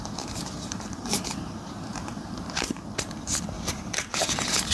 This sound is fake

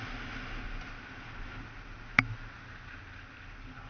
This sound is real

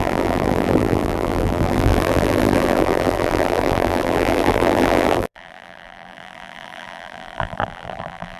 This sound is fake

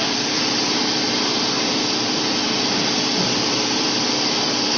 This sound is fake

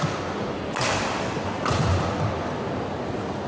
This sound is real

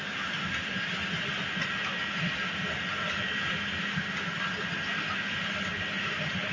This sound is real